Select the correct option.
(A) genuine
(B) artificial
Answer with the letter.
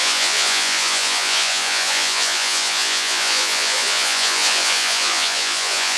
B